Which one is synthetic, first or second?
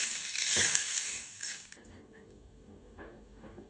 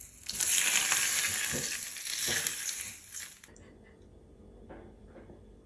first